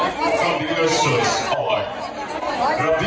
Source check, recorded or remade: recorded